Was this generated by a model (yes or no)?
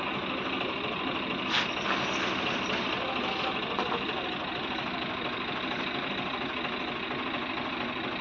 no